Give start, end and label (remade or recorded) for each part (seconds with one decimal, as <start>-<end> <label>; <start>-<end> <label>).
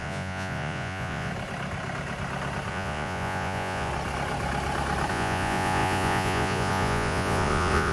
0.0-1.3 remade; 1.3-2.7 recorded; 2.7-3.9 remade; 3.9-5.1 recorded; 5.1-7.9 remade